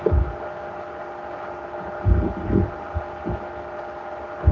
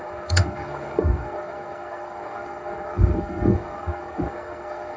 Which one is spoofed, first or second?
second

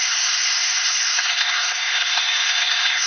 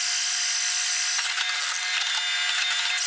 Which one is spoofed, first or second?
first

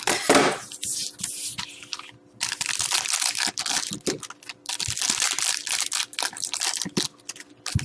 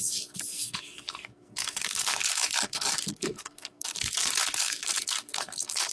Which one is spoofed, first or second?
second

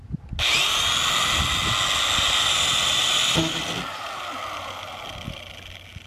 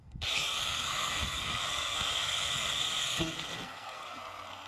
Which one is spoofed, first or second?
second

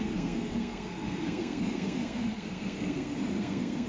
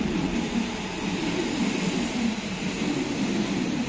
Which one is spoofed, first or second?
first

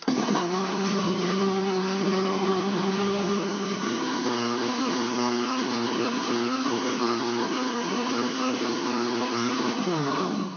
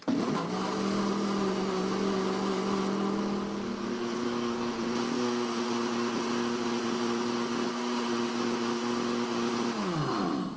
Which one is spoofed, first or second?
first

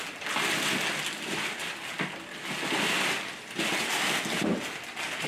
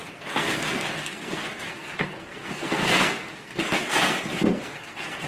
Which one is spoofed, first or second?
second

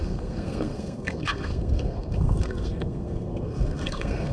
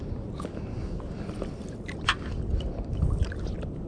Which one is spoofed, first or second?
first